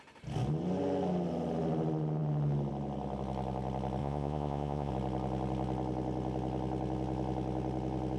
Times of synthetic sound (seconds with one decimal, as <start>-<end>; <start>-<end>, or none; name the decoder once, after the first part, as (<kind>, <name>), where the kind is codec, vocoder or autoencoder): 4.0-4.9 (vocoder, Vocos)